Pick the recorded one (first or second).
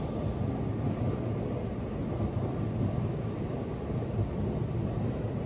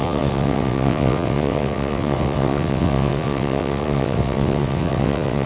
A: first